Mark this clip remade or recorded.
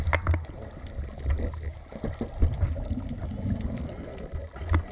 recorded